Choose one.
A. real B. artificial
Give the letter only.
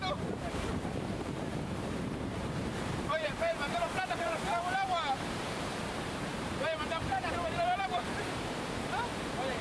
B